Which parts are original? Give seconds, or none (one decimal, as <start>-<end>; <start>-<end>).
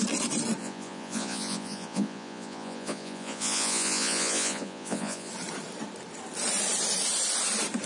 0.0-0.6; 5.3-7.9